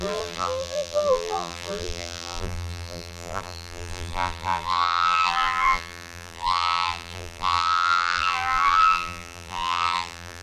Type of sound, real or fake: fake